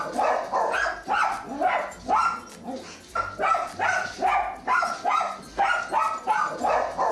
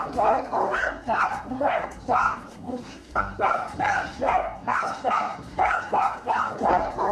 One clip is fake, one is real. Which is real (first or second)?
first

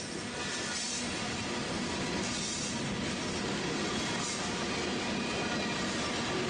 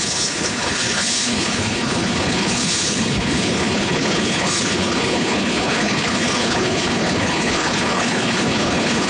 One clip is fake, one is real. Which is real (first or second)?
first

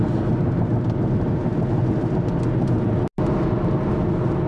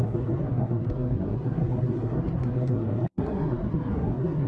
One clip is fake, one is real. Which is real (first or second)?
first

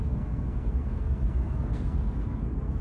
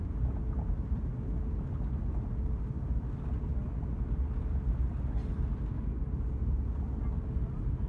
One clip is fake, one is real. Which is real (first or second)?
second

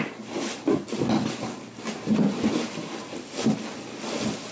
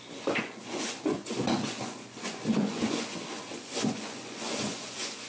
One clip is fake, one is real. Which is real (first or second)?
first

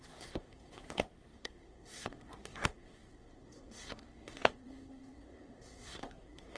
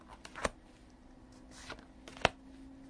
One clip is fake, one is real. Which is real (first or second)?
second